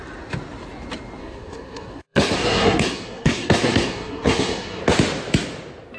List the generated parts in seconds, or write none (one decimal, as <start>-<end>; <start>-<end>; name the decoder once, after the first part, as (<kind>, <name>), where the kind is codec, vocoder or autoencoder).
1.2-4.8 (codec, SNAC)